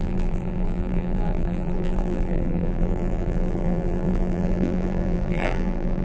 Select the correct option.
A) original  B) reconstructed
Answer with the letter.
B